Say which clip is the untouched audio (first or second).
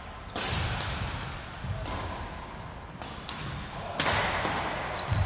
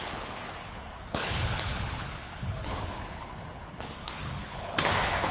first